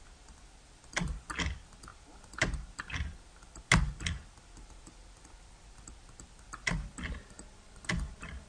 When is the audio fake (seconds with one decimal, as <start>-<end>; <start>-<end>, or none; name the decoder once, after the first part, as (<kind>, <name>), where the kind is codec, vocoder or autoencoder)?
none